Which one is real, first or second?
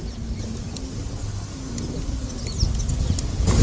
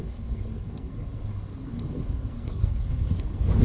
first